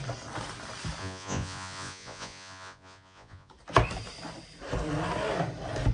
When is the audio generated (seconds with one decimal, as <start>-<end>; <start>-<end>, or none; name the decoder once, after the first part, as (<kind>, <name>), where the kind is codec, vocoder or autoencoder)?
1.0-3.5 (vocoder, Vocos)